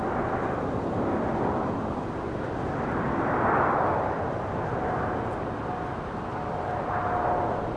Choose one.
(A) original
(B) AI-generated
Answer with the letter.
A